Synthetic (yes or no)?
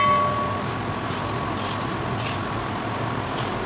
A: no